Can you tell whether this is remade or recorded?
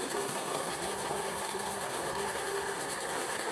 remade